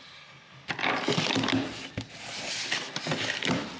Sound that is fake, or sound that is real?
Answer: real